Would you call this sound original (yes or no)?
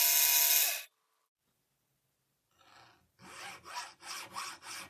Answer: yes